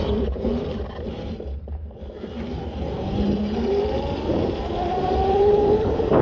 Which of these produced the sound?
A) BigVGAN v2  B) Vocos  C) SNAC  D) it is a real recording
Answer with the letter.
A